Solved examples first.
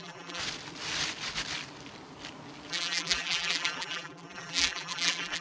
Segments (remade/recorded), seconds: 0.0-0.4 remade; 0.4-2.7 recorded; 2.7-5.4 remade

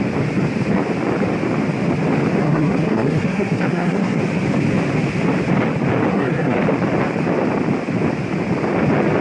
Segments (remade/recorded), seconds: 0.0-2.4 recorded; 2.4-4.2 remade; 4.2-6.1 recorded; 6.1-6.6 remade; 6.6-9.2 recorded

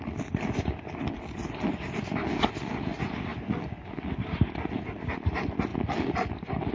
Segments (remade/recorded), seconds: 0.0-6.7 recorded

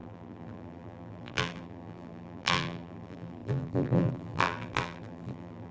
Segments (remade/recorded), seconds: 0.0-5.7 remade

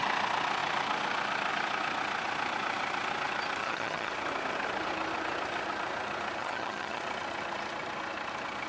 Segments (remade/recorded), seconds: 0.0-3.6 recorded; 3.6-4.1 remade; 4.1-6.4 recorded; 6.4-7.0 remade; 7.0-8.7 recorded

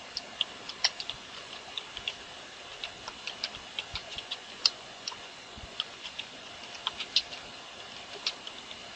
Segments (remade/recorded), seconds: 0.0-1.3 recorded; 1.3-1.8 remade; 1.8-4.0 recorded; 4.0-6.5 remade; 6.5-9.0 recorded